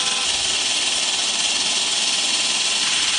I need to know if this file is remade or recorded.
recorded